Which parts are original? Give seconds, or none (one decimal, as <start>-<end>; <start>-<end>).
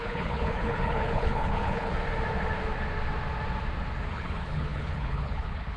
1.9-4.1